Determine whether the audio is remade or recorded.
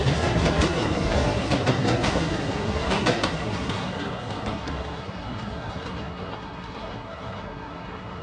remade